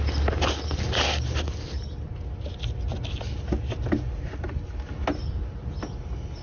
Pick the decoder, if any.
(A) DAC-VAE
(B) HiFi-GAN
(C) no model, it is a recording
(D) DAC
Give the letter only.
C